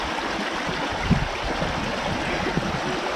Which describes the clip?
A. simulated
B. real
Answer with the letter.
B